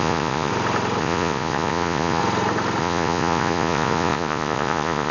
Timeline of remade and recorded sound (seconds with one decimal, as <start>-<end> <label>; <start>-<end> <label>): 0.0-0.5 remade; 0.5-1.0 recorded; 1.0-2.2 remade; 2.2-2.8 recorded; 2.8-5.1 remade